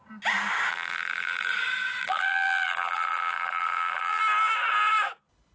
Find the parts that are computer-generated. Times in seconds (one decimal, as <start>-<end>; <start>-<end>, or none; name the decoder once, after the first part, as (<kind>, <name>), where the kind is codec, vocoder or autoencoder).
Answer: 0.7-1.5 (vocoder, BigVGAN v2); 2.0-4.2